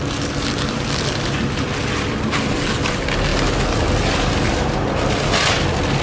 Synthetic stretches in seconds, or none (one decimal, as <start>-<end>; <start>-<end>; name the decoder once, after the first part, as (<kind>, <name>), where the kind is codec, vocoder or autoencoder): none